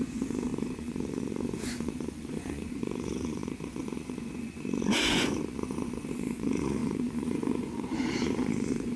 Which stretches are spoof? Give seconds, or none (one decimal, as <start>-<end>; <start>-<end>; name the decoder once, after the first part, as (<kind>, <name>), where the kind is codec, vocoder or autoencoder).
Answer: 0.0-9.0 (vocoder, Vocos)